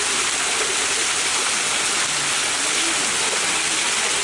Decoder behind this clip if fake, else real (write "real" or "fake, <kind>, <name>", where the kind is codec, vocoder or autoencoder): real